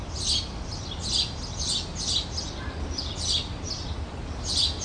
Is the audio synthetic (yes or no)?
no